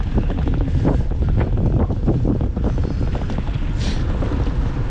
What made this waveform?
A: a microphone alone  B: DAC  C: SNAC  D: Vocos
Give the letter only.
A